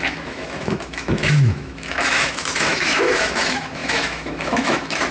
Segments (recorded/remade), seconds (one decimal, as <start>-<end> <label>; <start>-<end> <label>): 0.0-5.1 remade